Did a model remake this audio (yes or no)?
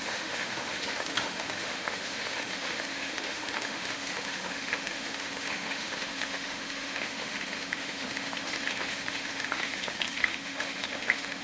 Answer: yes